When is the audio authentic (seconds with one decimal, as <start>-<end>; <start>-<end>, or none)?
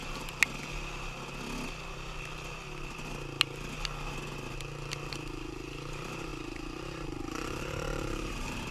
0.0-5.1